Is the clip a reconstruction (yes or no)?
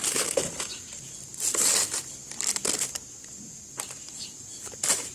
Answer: no